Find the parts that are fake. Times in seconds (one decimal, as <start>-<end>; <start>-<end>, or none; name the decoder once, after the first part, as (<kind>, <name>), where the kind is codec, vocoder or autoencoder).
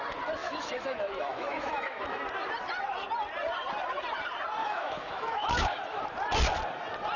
0.4-2.2 (autoencoder, DAC-VAE); 4.6-6.0